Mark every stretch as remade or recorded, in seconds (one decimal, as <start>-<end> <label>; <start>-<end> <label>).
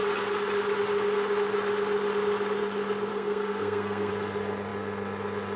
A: 0.0-3.1 recorded; 3.1-4.1 remade; 4.1-5.6 recorded